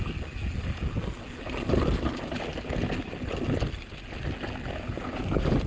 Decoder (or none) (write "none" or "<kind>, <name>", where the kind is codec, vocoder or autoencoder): none